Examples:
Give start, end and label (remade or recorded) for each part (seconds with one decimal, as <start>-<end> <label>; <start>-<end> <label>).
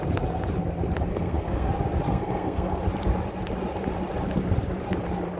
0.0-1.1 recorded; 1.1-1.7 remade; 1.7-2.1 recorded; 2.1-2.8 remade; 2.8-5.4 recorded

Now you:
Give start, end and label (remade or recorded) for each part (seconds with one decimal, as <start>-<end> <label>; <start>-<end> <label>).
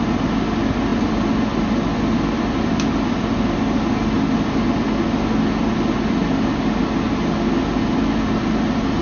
0.0-9.0 recorded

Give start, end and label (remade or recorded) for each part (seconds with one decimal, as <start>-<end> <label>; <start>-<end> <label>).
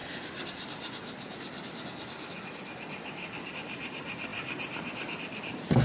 0.0-3.5 recorded; 3.5-5.8 remade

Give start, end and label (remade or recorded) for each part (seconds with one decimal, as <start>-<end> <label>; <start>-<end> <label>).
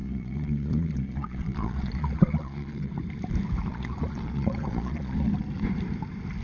0.0-2.9 remade; 2.9-3.7 recorded; 3.7-5.3 remade; 5.3-6.4 recorded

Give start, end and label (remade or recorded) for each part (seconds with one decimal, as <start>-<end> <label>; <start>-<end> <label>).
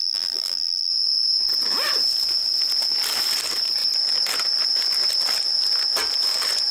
0.0-0.9 remade; 0.9-6.7 recorded